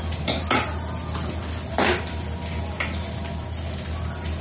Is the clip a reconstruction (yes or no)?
no